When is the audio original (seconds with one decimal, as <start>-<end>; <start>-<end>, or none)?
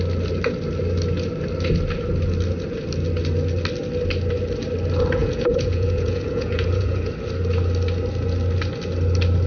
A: 0.0-5.2; 7.1-9.5